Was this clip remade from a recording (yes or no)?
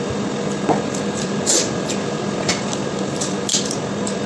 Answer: no